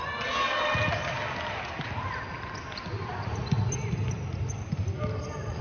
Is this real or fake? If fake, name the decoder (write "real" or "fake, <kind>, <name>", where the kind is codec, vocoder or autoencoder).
real